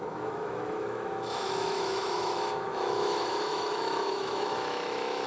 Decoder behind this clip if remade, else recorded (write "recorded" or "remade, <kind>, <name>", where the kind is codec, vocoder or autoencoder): remade, autoencoder, DAC-VAE